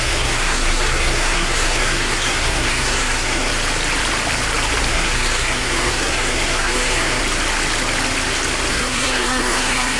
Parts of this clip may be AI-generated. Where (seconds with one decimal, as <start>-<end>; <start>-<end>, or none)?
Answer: 0.0-3.5; 4.9-7.2; 8.7-10.0